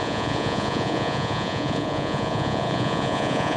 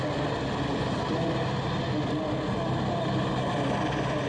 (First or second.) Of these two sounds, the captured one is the second